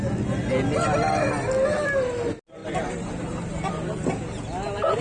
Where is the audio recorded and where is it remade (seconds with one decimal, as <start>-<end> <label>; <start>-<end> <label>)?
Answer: 0.0-2.6 recorded; 2.6-3.7 remade; 3.7-5.0 recorded